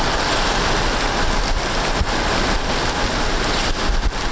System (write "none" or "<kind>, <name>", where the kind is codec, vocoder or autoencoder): none